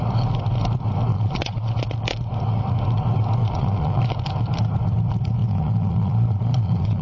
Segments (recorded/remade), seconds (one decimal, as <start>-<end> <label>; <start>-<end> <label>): 0.0-1.1 recorded; 1.1-1.8 remade; 1.8-3.4 recorded; 3.4-4.0 remade; 4.0-5.4 recorded; 5.4-7.0 remade